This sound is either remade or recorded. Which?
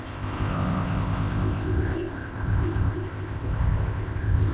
remade